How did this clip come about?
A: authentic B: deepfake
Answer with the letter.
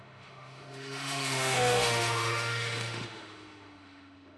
B